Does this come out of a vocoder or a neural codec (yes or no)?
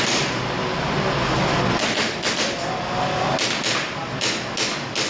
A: no